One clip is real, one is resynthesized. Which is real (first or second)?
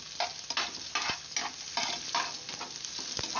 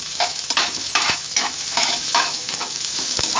first